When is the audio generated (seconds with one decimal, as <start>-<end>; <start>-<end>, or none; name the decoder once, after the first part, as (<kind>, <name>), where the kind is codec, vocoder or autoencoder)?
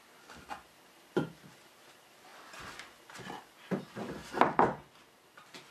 none